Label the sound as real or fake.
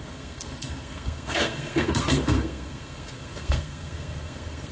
fake